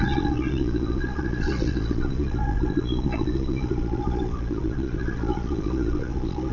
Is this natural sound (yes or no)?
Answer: no